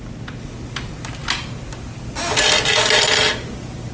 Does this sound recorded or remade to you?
recorded